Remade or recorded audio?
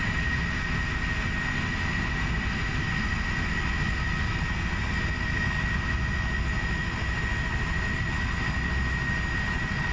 recorded